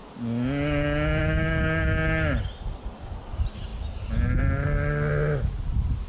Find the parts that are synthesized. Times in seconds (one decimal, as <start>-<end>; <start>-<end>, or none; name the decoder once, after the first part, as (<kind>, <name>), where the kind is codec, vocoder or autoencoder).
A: none